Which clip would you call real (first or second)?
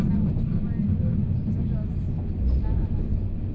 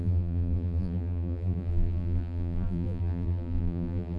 first